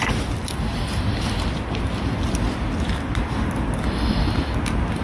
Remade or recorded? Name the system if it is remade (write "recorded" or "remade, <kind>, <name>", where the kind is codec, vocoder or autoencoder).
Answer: recorded